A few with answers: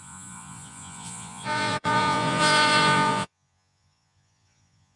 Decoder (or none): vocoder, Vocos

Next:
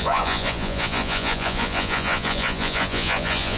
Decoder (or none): vocoder, Vocos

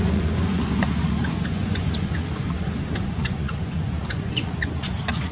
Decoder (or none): vocoder, Vocos